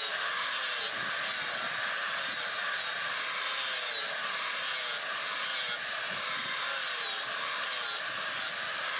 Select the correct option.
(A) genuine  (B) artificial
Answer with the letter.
A